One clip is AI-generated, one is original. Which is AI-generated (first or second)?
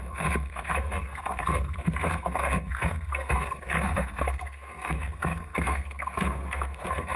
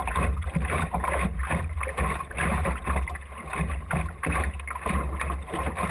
first